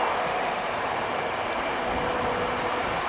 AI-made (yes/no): no